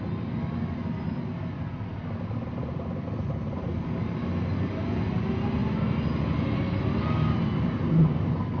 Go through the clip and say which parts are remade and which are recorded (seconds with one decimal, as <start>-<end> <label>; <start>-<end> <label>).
0.0-8.6 recorded